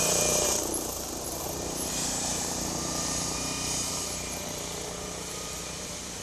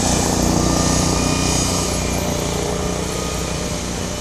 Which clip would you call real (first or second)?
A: second